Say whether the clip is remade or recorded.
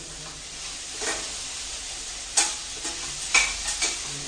recorded